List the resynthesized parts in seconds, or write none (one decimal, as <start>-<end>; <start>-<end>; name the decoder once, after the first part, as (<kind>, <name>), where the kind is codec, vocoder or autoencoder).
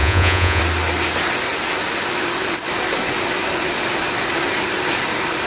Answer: 0.0-0.6 (vocoder, Vocos)